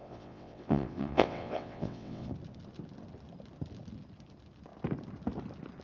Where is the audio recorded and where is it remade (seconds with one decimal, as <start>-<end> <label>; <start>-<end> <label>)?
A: 0.0-2.3 remade; 2.3-5.8 recorded